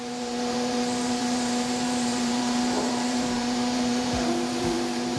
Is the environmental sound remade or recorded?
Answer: remade